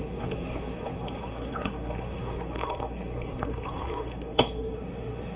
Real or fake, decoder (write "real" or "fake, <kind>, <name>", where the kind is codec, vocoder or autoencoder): fake, codec, SNAC